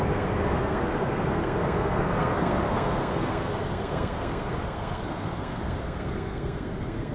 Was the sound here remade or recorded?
remade